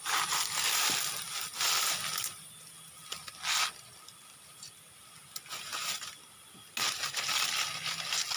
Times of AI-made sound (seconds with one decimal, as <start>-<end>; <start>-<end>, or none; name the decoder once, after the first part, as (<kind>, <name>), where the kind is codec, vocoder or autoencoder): none